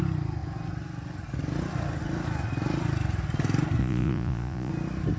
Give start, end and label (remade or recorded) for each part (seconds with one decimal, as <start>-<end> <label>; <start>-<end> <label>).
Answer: 0.0-3.8 recorded; 3.8-4.7 remade; 4.7-5.2 recorded